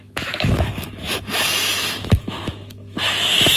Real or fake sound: fake